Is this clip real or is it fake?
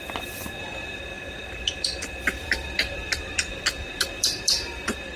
fake